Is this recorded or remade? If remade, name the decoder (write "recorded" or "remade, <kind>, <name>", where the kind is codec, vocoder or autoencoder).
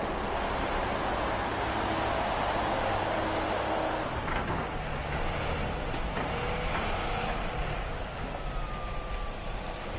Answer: recorded